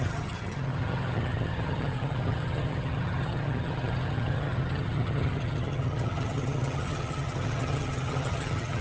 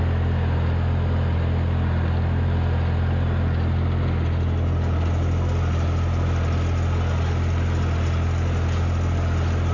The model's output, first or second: first